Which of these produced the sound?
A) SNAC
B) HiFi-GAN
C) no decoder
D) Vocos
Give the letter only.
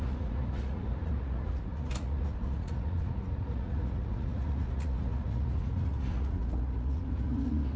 D